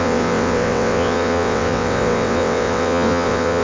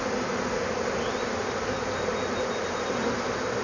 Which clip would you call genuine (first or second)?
second